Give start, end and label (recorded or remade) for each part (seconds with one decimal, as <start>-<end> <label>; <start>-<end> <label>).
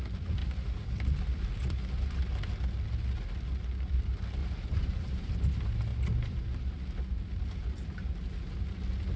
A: 0.0-4.4 recorded; 4.4-5.3 remade; 5.3-5.9 recorded; 5.9-6.4 remade; 6.4-9.2 recorded